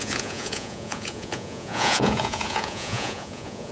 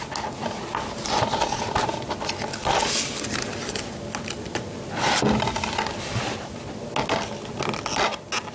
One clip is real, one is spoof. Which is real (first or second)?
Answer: second